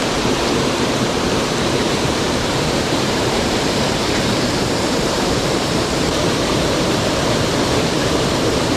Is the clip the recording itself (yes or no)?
no